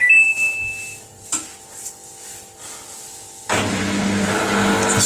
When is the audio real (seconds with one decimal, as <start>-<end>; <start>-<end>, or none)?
0.0-5.1